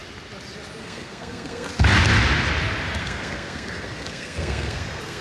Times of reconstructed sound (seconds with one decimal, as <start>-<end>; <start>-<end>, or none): 0.8-1.7; 3.0-5.2